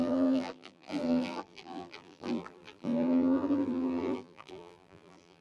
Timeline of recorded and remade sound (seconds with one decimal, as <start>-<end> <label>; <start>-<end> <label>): 0.0-5.4 remade